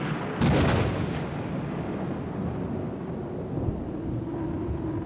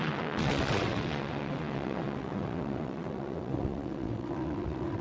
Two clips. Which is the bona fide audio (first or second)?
first